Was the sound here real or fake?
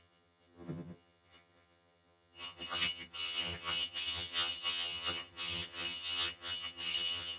fake